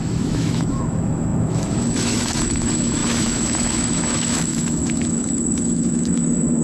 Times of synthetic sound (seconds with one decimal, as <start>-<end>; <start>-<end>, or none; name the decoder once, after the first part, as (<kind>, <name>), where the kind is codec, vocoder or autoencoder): 0.0-6.6 (autoencoder, DAC-VAE)